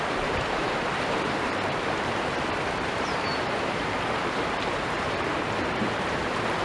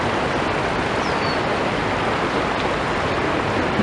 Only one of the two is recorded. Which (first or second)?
second